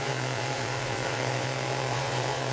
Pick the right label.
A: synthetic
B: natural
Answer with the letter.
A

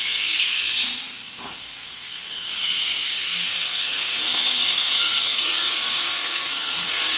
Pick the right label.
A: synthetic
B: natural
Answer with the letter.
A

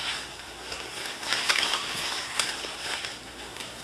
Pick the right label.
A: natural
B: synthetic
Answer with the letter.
B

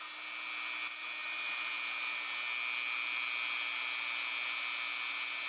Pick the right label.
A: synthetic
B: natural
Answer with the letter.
B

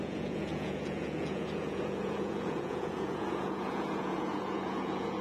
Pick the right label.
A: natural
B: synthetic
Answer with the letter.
B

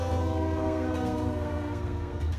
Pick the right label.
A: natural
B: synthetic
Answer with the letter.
B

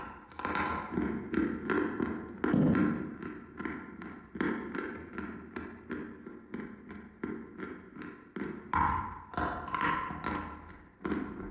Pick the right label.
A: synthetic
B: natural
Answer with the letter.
B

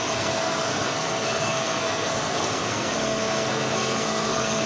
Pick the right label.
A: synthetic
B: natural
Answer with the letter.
A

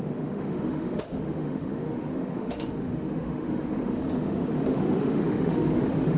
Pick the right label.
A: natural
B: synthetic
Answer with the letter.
B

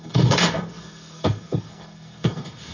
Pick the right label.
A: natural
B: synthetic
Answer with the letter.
B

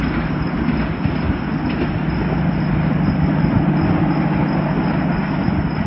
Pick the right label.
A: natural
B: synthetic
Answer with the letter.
A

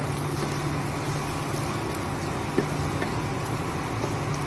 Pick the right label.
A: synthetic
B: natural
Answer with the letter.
B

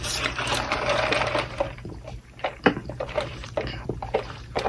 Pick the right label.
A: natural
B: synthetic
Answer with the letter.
B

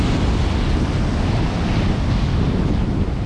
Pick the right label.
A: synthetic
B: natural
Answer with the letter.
B